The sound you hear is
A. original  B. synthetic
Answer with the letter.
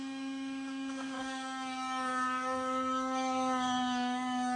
B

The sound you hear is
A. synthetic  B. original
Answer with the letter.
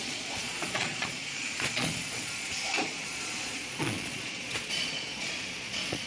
A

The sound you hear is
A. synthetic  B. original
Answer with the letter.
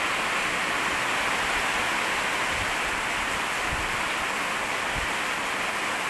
B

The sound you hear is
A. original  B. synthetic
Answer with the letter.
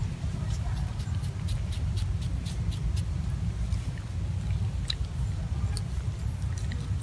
A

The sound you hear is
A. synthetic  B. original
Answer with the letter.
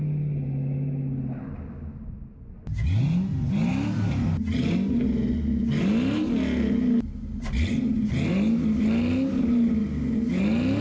B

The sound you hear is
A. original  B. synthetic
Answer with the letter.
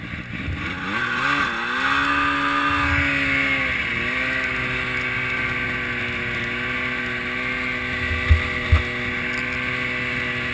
A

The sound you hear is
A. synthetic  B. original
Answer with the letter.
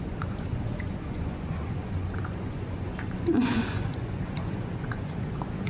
A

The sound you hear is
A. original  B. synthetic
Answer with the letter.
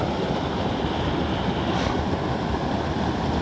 A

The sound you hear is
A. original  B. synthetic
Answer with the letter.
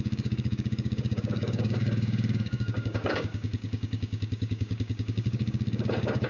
B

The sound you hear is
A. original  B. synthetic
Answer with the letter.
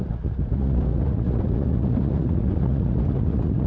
B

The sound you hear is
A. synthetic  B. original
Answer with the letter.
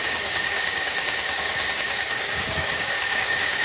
A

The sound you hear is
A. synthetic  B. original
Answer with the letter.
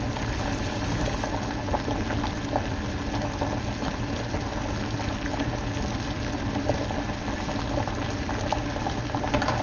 B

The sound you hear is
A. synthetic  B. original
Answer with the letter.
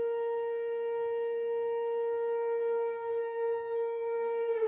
A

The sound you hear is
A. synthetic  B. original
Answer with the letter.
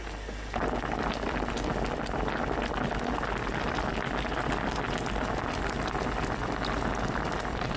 B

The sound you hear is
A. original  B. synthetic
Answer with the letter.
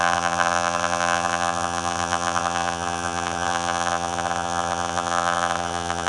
B